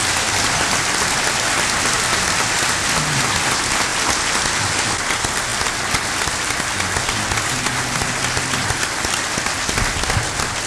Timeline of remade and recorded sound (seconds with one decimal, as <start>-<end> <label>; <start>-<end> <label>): 0.0-10.7 recorded